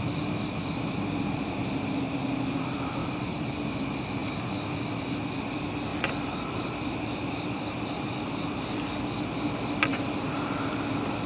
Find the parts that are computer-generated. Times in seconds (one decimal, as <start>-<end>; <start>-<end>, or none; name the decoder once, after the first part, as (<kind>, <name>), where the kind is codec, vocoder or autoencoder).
3.0-3.5 (vocoder, BigVGAN v2); 5.9-9.0; 9.9-10.4